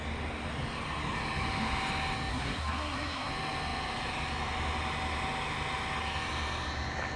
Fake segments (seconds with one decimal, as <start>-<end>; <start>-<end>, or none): 2.3-3.3